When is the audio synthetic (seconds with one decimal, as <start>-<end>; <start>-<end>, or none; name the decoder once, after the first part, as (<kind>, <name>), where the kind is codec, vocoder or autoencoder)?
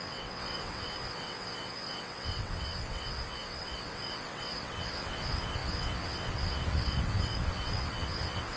0.0-8.6 (vocoder, WaveNeXt)